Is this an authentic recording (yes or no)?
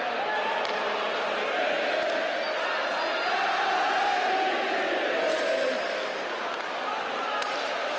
yes